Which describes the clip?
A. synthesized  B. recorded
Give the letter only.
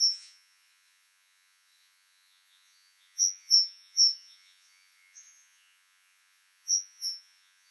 A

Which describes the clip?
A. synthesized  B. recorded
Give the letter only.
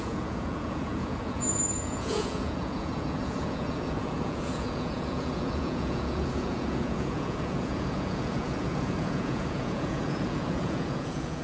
A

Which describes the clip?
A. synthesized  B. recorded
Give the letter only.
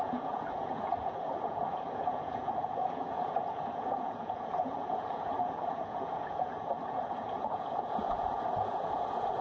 A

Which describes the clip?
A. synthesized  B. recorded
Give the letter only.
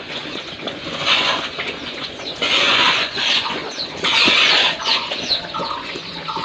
A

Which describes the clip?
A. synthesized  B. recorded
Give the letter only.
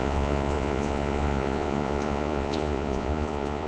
A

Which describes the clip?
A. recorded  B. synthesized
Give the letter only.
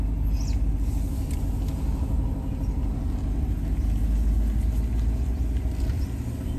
A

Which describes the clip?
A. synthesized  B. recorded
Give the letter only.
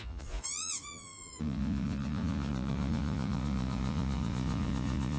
A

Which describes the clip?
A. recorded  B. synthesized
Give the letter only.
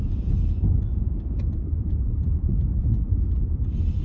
B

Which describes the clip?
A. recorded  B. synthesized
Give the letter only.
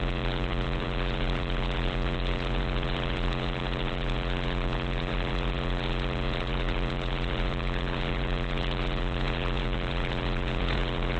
B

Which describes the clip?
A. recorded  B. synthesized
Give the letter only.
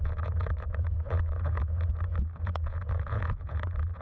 B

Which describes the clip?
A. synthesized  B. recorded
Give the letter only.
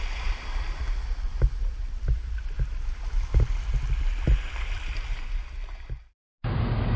B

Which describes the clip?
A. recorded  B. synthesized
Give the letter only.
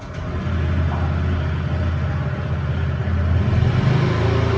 A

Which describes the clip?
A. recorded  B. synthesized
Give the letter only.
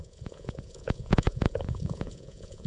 B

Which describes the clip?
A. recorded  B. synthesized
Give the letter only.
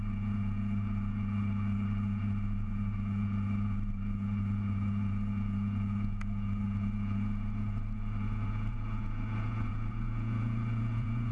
B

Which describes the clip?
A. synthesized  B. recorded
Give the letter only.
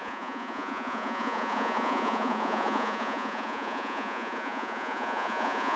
A